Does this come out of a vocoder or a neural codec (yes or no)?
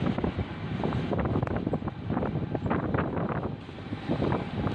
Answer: yes